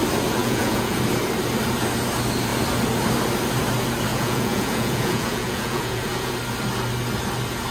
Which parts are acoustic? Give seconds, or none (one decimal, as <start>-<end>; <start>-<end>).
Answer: 0.0-0.4; 1.0-4.1; 6.3-7.7